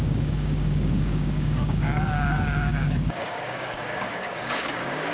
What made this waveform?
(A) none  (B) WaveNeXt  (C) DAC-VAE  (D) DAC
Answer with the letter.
D